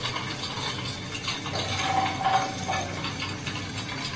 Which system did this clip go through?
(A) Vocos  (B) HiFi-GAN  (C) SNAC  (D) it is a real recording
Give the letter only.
D